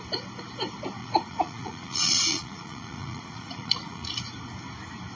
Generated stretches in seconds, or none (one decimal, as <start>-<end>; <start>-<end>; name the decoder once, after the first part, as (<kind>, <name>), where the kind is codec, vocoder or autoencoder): 1.0-4.1 (vocoder, Vocos)